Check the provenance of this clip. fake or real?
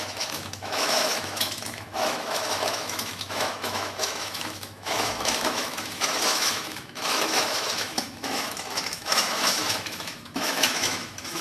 fake